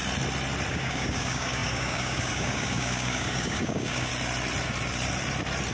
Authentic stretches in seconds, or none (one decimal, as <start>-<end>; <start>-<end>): 0.0-0.7; 4.1-5.7